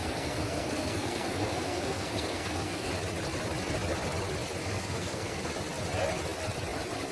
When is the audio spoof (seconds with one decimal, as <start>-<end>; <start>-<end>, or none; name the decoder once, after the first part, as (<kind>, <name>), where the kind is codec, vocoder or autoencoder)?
0.0-2.9 (codec, SNAC); 4.6-5.5